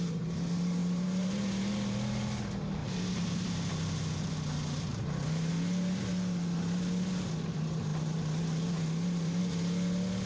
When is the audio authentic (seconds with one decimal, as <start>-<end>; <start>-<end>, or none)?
0.0-0.8; 1.4-2.8; 3.8-4.9; 5.5-10.3